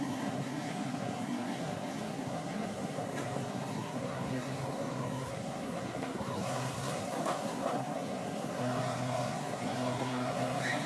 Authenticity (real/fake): fake